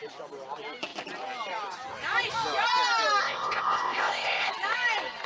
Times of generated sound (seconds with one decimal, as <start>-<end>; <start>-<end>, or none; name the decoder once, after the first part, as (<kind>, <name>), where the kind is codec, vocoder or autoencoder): 3.2-4.5 (codec, ZipCodec)